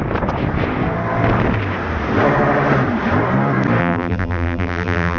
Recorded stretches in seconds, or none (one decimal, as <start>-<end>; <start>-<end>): 0.0-3.8